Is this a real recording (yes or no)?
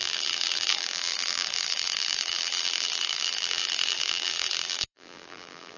no